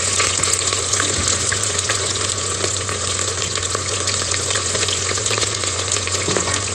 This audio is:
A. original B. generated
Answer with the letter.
B